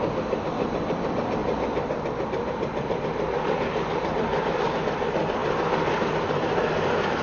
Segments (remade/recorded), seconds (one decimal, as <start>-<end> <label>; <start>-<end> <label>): 0.0-1.4 recorded; 1.4-4.8 remade; 4.8-5.4 recorded; 5.4-6.7 remade; 6.7-7.2 recorded